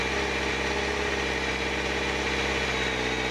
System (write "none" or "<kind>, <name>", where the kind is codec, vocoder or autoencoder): none